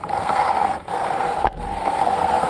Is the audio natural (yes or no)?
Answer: no